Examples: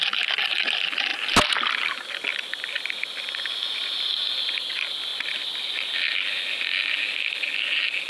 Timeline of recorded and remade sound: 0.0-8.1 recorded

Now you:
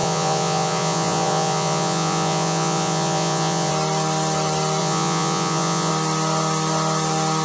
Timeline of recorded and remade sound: 0.0-3.7 remade; 3.7-4.8 recorded; 4.8-5.9 remade; 5.9-7.4 recorded

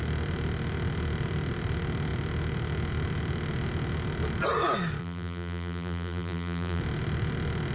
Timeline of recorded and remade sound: 0.0-5.0 recorded; 5.0-6.8 remade; 6.8-7.7 recorded

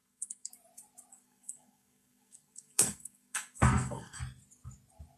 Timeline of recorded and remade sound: 0.0-0.5 remade; 0.5-1.1 recorded; 1.1-4.2 remade; 4.2-5.2 recorded